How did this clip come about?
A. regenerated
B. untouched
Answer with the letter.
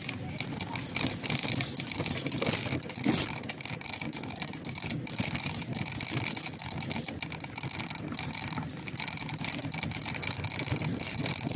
B